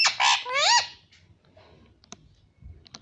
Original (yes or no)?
yes